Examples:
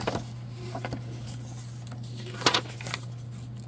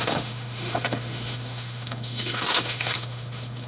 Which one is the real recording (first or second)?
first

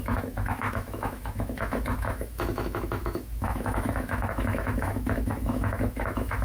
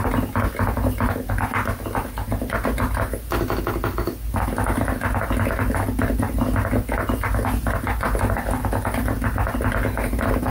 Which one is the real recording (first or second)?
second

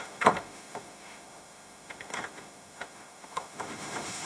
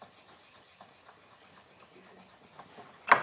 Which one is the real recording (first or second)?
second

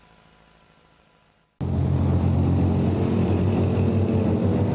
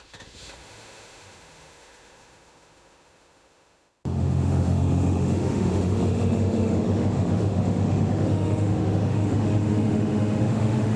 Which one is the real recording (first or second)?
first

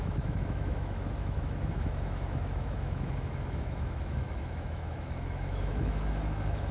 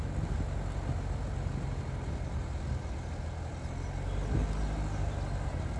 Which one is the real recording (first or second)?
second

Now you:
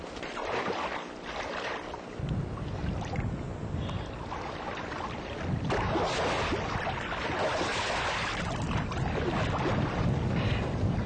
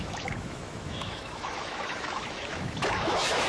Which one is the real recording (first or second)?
first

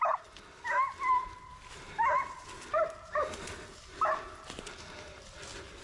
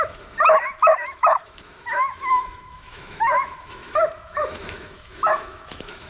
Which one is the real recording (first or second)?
first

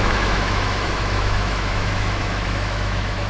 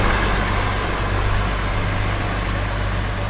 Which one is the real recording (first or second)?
second